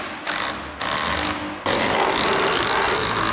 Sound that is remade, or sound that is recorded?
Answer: recorded